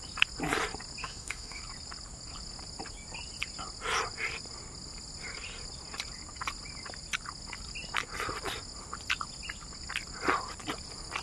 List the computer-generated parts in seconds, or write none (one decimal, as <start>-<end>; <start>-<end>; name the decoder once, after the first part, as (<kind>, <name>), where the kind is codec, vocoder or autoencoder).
1.0-1.6 (autoencoder, DAC-VAE)